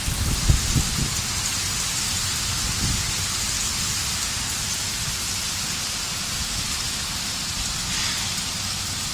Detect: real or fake real